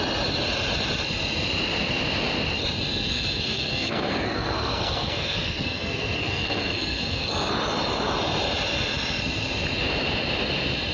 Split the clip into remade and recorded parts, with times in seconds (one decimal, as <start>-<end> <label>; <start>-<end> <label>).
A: 0.0-2.9 recorded; 2.9-7.5 remade; 7.5-10.9 recorded